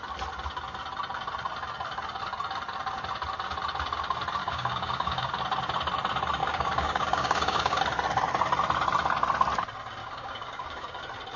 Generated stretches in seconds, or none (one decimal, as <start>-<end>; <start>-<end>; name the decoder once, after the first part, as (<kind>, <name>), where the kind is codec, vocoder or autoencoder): 4.4-5.3 (codec, DAC); 6.4-7.8; 10.0-11.0